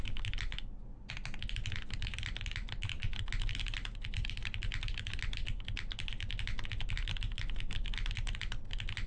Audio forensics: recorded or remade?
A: recorded